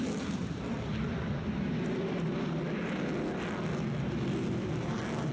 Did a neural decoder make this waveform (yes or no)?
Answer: no